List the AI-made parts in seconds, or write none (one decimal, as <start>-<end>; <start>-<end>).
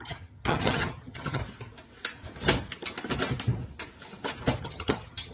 0.0-1.4; 4.6-5.3